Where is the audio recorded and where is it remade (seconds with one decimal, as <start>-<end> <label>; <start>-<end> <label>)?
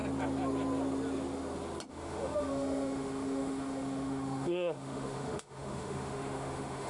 0.0-1.9 recorded; 1.9-6.9 remade